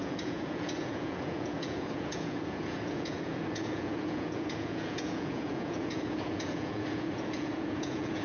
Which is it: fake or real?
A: fake